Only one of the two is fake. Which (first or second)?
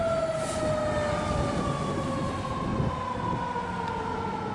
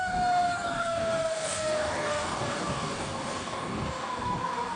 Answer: second